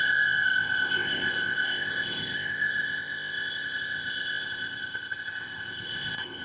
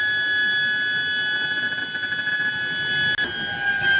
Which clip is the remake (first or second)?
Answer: first